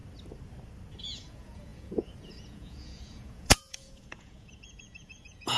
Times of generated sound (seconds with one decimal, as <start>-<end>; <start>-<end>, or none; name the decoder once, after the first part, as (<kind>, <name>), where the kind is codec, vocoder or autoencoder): 1.0-5.6 (vocoder, Vocos)